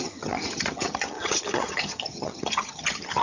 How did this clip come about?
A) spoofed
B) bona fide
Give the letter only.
A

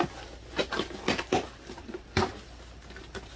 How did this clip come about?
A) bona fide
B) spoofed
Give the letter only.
A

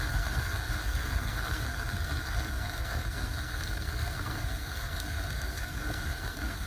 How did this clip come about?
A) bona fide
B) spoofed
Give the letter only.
B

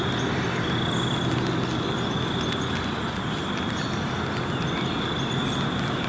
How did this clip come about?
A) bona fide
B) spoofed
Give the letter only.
A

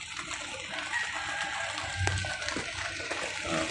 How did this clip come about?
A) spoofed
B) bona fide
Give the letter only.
B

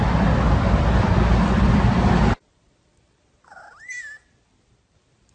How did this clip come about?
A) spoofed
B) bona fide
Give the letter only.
A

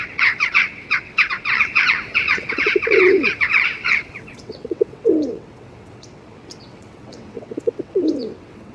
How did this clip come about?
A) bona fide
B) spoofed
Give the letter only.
B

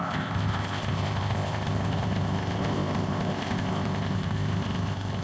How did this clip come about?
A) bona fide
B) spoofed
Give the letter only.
B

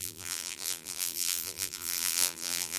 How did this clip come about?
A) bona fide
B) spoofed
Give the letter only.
B